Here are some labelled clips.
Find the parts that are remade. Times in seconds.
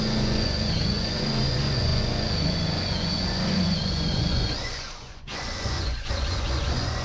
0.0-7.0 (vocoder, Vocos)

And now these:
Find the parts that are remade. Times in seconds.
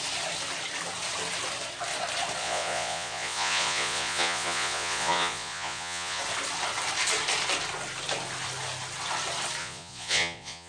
2.4-6.2 (vocoder, Vocos); 9.6-10.7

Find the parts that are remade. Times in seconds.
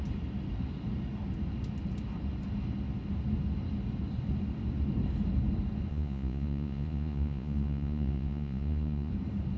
5.9-9.1 (vocoder, Vocos)